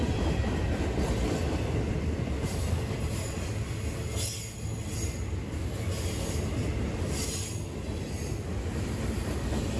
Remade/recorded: recorded